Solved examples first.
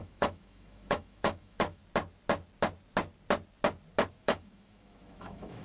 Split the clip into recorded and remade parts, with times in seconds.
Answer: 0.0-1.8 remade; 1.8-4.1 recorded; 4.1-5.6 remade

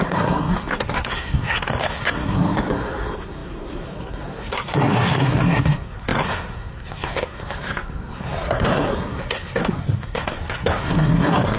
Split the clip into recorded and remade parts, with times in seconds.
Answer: 0.0-11.6 remade

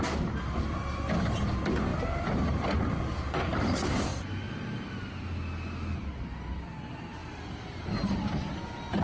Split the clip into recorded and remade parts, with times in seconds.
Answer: 0.0-9.0 recorded

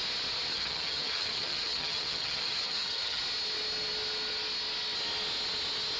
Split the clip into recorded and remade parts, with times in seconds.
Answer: 0.0-0.5 recorded; 0.5-3.2 remade; 3.2-6.0 recorded